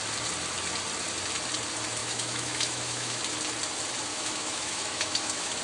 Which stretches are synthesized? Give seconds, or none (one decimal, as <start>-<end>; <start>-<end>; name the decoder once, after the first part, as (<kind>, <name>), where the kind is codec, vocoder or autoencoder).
2.0-3.2 (autoencoder, DAC-VAE); 4.1-5.6